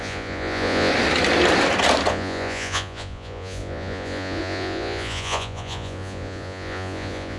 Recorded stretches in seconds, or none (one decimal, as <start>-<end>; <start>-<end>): 0.9-2.1